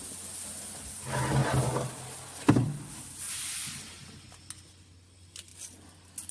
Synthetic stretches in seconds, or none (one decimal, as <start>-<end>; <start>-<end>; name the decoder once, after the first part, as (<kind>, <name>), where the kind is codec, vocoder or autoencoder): none